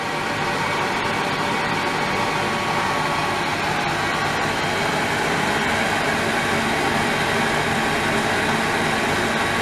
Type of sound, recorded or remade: recorded